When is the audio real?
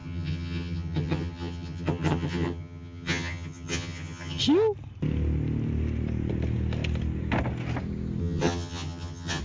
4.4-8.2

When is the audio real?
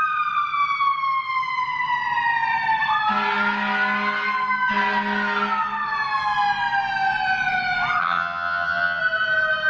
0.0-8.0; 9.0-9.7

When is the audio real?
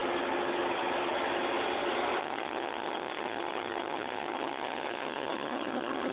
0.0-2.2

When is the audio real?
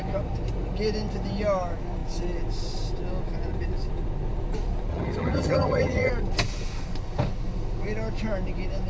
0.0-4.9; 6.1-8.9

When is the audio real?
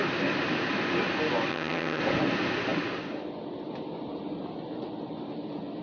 0.0-1.5; 2.0-5.8